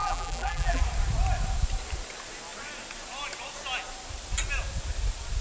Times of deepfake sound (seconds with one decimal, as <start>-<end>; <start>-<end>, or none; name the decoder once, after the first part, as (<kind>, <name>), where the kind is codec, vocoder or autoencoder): 0.0-0.8 (vocoder, BigVGAN v2)